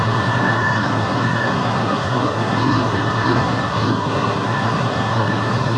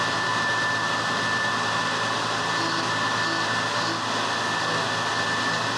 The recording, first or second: second